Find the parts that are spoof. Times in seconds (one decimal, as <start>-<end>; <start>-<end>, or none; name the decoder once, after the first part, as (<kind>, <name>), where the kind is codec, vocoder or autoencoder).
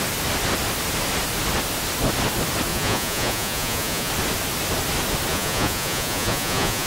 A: 2.7-4.1 (vocoder, Vocos); 5.3-6.9